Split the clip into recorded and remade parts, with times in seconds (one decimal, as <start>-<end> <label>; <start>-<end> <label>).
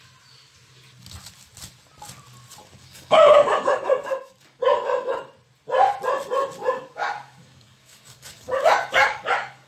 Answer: 0.0-2.7 recorded; 2.7-5.2 remade; 5.2-6.6 recorded; 6.6-9.7 remade